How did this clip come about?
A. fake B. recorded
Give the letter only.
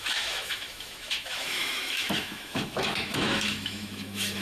A